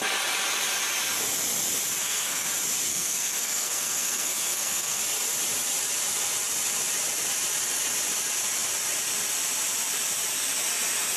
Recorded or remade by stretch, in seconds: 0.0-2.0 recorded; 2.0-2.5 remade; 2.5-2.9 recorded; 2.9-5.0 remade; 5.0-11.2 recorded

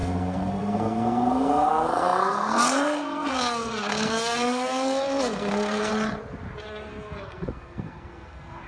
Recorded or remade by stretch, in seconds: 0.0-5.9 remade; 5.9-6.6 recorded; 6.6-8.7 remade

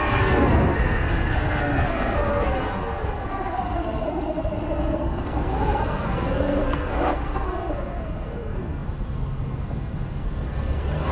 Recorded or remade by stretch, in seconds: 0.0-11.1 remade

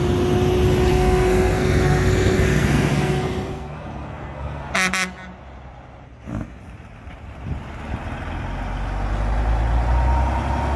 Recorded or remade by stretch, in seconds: 0.0-0.9 recorded; 0.9-4.7 remade; 4.7-10.8 recorded

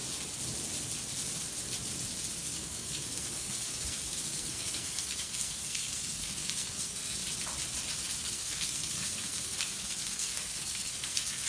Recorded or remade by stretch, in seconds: 0.0-2.4 recorded; 2.4-7.2 remade; 7.2-8.2 recorded; 8.2-11.5 remade